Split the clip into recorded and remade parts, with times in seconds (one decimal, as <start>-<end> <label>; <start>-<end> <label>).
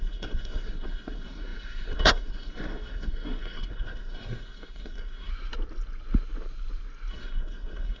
0.0-5.3 remade; 5.3-7.1 recorded; 7.1-8.0 remade